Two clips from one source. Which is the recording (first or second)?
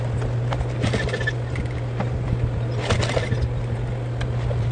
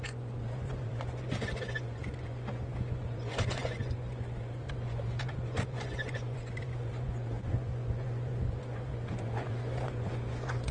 first